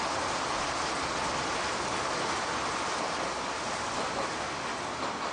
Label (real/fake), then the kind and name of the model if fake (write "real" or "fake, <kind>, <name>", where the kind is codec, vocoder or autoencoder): real